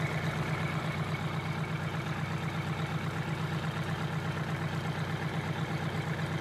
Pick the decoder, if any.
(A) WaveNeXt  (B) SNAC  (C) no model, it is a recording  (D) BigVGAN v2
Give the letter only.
C